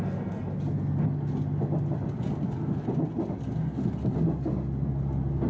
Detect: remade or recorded recorded